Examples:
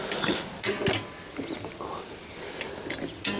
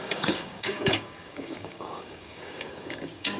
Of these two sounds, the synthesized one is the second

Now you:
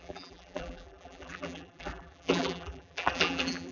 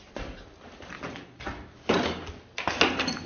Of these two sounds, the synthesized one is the first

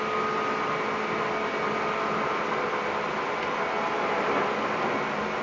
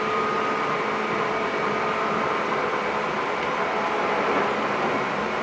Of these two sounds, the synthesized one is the second